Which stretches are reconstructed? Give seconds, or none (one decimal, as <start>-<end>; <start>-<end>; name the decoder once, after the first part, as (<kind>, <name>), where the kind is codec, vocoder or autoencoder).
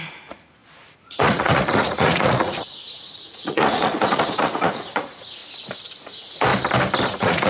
0.0-5.4 (vocoder, Vocos); 6.0-6.5; 7.1-7.5